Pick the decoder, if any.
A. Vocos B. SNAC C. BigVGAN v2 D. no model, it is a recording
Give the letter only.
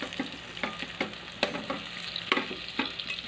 D